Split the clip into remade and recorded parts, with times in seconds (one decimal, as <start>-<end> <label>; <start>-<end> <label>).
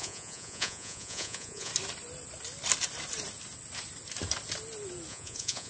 0.0-1.7 remade; 1.7-5.1 recorded; 5.1-5.7 remade